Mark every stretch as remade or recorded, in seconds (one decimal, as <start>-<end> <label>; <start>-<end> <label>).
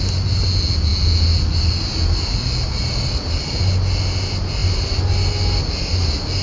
0.0-6.4 recorded